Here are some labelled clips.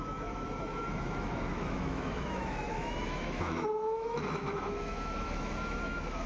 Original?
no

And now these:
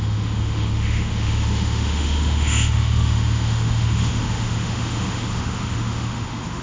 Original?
no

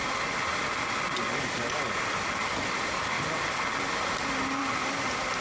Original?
yes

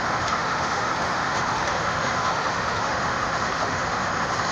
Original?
no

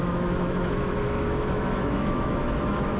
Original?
no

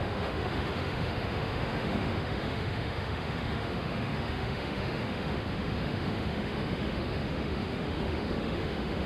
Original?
no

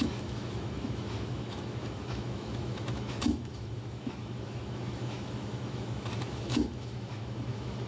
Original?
no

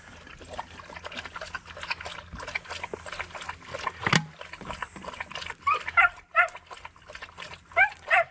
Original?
yes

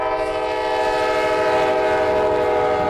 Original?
yes